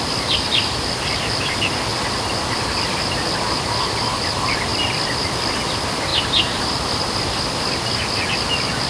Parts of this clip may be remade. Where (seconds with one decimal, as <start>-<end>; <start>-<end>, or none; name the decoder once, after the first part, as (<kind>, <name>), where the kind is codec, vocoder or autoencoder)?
0.0-1.9 (vocoder, BigVGAN v2); 2.5-6.1; 6.6-8.9